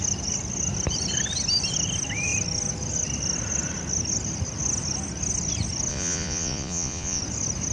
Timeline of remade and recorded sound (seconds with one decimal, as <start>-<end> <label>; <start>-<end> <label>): 0.0-5.9 recorded; 5.9-7.2 remade; 7.2-7.7 recorded